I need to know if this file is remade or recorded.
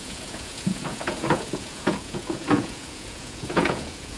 remade